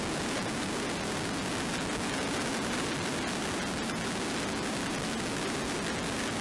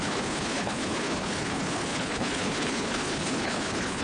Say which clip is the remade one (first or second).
second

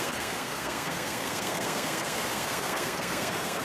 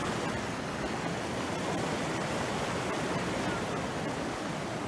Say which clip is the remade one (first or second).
first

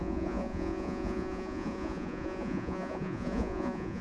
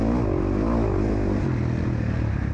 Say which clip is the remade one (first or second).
first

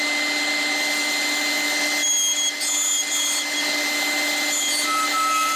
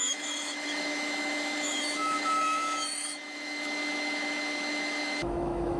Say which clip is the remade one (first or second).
second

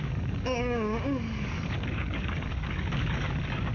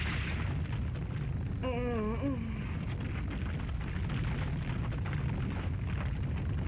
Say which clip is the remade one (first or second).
first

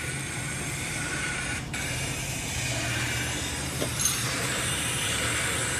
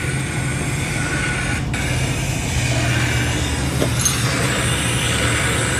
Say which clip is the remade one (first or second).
first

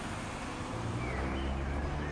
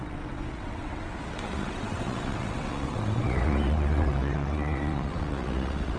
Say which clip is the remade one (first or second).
second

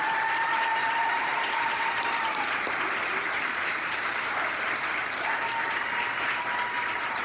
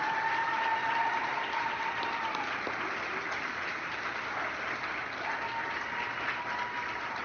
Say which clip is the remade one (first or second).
first